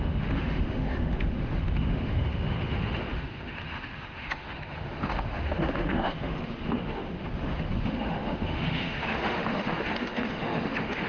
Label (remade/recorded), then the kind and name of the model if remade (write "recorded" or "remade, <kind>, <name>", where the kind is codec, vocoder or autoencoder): remade, autoencoder, DAC-VAE